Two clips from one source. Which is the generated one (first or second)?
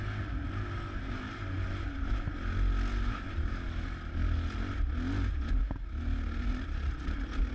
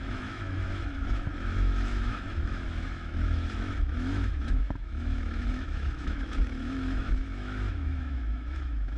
second